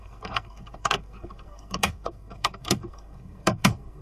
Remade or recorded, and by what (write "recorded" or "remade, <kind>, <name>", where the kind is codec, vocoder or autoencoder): remade, codec, SNAC